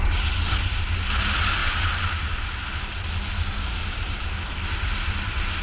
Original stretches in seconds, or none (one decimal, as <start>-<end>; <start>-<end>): 0.0-1.6; 2.4-5.6